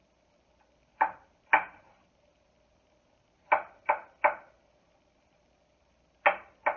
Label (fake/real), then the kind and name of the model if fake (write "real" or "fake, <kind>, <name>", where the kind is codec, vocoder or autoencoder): real